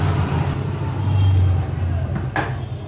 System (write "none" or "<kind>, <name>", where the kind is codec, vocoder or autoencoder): none